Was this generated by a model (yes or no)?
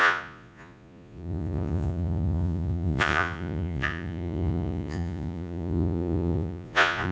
yes